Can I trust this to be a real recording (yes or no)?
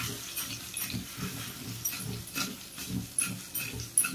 yes